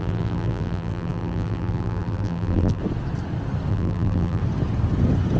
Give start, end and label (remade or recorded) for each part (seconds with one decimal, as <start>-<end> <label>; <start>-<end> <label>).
0.0-2.8 remade; 2.8-3.7 recorded; 3.7-4.4 remade; 4.4-5.4 recorded

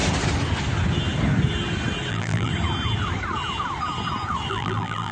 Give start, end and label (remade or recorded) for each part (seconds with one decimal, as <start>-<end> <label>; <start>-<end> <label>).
0.0-2.1 recorded; 2.1-2.5 remade; 2.5-4.5 recorded; 4.5-5.1 remade

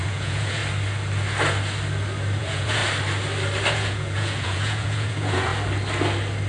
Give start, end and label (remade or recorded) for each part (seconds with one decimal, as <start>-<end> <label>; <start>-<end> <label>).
0.0-0.6 remade; 0.6-2.4 recorded; 2.4-2.8 remade; 2.8-3.7 recorded; 3.7-5.5 remade; 5.5-6.5 recorded

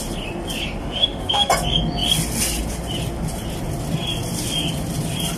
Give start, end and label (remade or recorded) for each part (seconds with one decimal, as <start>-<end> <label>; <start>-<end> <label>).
0.0-0.8 recorded; 0.8-1.5 remade; 1.5-5.4 recorded

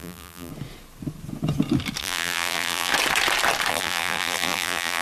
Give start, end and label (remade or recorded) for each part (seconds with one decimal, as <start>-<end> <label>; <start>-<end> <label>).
0.0-0.5 remade; 0.5-2.0 recorded; 2.0-2.9 remade; 2.9-3.7 recorded; 3.7-5.0 remade

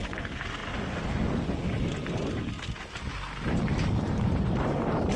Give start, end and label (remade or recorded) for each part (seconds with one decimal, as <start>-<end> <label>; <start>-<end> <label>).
0.0-0.6 remade; 0.6-3.7 recorded; 3.7-5.2 remade

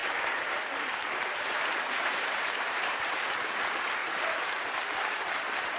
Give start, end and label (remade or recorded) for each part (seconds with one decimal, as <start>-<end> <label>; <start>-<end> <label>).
0.0-3.0 remade; 3.0-4.0 recorded; 4.0-4.7 remade; 4.7-5.8 recorded